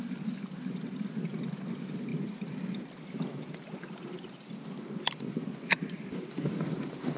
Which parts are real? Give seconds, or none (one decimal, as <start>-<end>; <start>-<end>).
0.0-7.2